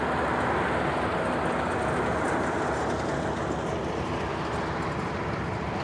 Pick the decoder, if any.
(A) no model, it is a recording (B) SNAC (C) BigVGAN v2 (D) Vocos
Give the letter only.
A